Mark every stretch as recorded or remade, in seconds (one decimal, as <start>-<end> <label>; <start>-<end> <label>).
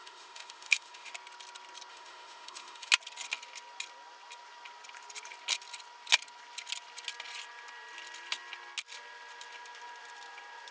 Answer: 0.0-1.1 remade; 1.1-1.9 recorded; 1.9-2.9 remade; 2.9-10.7 recorded